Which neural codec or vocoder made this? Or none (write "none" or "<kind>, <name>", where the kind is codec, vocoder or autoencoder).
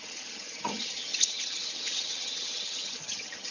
vocoder, HiFi-GAN